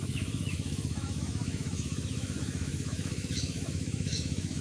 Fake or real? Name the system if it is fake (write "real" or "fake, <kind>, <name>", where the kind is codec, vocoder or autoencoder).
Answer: fake, autoencoder, DAC-VAE